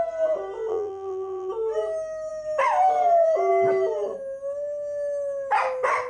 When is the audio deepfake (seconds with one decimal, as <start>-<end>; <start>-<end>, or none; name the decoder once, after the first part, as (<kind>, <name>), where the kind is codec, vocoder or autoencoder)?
0.7-1.5 (vocoder, BigVGAN v2)